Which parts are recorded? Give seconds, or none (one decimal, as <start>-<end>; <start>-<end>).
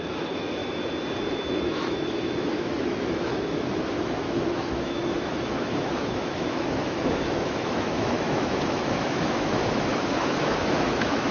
0.6-1.3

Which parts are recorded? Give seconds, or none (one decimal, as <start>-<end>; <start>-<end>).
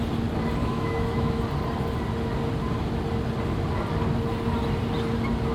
0.0-0.6; 1.4-5.5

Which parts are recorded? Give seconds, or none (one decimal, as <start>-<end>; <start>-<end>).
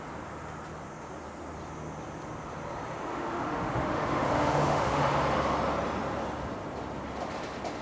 0.0-3.1; 5.0-7.8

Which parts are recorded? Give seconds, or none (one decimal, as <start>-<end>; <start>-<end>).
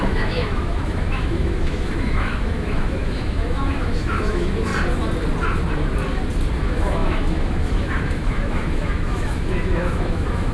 4.7-6.6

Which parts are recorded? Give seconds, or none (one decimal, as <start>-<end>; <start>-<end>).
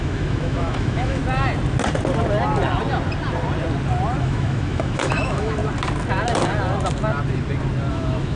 1.2-4.2; 5.6-7.9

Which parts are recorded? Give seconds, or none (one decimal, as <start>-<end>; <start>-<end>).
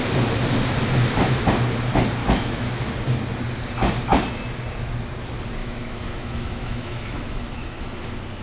0.0-2.2; 2.9-5.6; 8.0-8.4